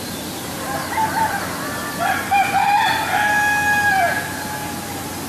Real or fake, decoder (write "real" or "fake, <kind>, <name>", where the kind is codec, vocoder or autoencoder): real